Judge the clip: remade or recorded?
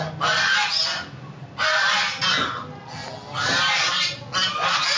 recorded